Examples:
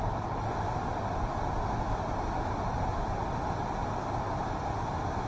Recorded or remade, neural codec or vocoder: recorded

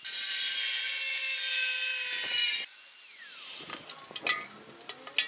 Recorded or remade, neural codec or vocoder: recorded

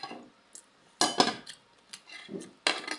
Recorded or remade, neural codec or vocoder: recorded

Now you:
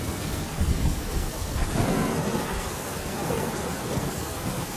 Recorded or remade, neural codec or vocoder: remade, codec, SNAC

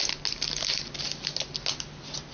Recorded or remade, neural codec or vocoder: recorded